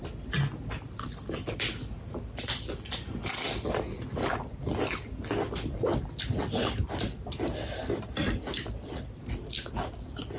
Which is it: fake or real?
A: real